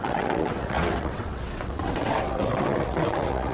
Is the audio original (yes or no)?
no